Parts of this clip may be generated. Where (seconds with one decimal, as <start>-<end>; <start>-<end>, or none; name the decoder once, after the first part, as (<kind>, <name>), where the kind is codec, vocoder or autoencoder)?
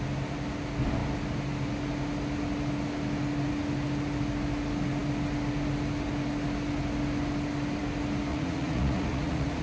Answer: 8.3-9.6 (vocoder, Vocos)